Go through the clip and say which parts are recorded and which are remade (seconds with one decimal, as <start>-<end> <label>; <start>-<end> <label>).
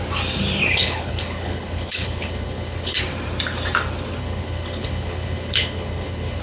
0.0-0.7 recorded; 0.7-3.0 remade; 3.0-4.2 recorded; 4.2-6.4 remade